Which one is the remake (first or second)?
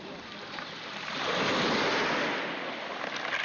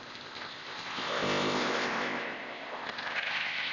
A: second